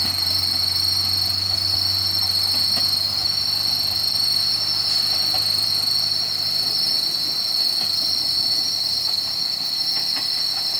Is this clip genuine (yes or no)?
yes